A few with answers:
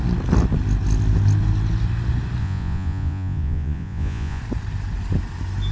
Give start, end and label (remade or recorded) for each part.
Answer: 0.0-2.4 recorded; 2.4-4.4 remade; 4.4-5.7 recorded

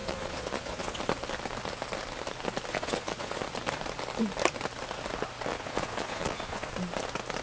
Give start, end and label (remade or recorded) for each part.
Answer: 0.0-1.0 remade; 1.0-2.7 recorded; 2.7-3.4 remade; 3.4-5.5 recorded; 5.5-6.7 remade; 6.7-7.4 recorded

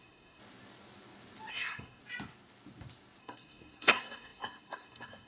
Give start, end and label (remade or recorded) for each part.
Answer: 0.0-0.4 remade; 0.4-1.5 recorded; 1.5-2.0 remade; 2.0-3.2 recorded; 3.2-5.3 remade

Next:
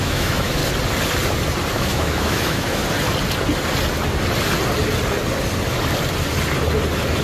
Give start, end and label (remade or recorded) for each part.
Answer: 0.0-0.6 remade; 0.6-1.7 recorded; 1.7-2.8 remade; 2.8-7.2 recorded

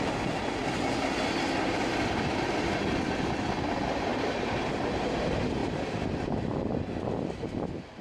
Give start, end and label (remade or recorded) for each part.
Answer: 0.0-4.1 recorded; 4.1-4.6 remade; 4.6-8.0 recorded

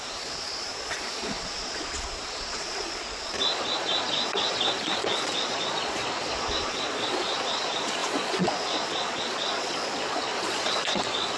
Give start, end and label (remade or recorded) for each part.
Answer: 0.0-11.4 remade